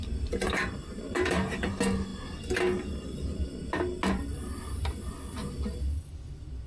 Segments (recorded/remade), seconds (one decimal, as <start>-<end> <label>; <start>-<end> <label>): 0.0-1.7 remade; 1.7-6.7 recorded